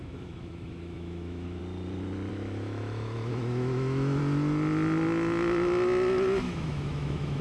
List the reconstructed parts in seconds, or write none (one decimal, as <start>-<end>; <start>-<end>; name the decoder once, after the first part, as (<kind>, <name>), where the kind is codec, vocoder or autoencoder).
0.0-1.6 (autoencoder, DAC-VAE); 2.3-4.2; 6.4-7.4